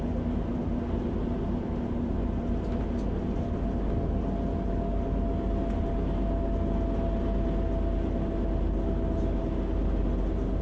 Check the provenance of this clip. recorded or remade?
recorded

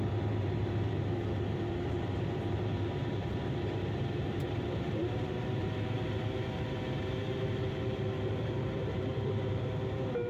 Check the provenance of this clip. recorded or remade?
remade